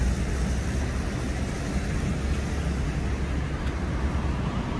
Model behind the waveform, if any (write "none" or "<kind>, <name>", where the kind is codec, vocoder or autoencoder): none